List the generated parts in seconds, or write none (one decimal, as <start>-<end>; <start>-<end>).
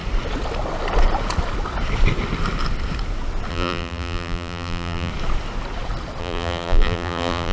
3.5-5.1; 6.2-7.5